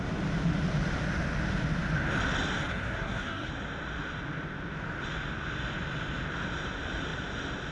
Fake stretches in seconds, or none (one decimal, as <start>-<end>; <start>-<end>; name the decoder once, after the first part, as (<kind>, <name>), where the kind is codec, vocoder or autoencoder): 2.7-3.5 (codec, SNAC)